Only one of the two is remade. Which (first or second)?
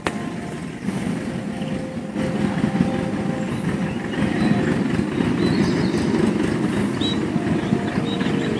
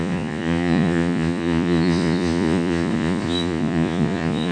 second